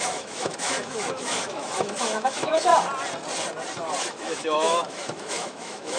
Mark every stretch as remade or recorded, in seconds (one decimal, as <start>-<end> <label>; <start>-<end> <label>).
0.0-2.7 remade; 2.7-4.1 recorded; 4.1-6.0 remade